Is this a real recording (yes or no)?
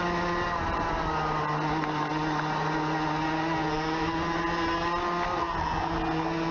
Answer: yes